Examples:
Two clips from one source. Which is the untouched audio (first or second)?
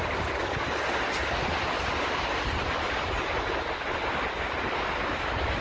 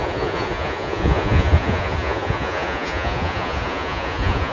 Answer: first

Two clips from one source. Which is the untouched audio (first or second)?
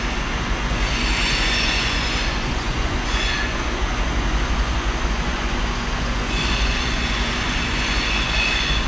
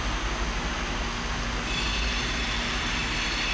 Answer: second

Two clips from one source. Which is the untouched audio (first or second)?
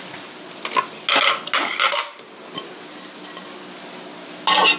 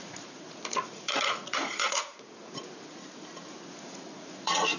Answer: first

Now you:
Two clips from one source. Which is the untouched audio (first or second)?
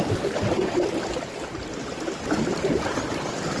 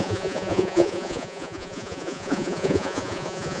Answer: first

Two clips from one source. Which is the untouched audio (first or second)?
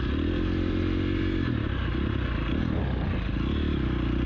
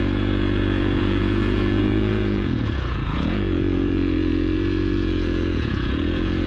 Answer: first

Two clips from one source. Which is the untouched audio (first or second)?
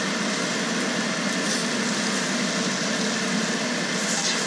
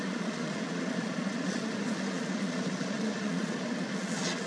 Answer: first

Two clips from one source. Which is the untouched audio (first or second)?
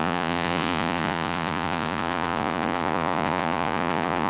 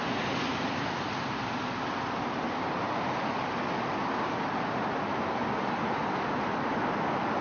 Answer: second